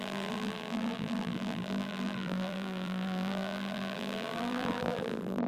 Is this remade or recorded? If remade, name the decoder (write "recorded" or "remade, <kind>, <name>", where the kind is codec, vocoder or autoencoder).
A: remade, vocoder, BigVGAN v2